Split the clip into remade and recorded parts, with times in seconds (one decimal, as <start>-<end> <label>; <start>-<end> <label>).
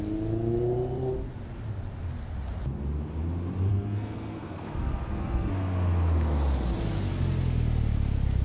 0.0-3.7 recorded; 3.7-5.5 remade; 5.5-8.4 recorded